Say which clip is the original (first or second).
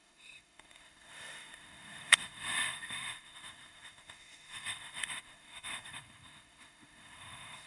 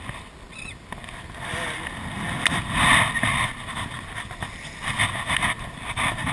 second